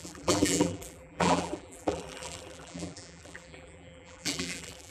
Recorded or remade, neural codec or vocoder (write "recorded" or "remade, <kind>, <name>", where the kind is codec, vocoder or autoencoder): remade, vocoder, BigVGAN v2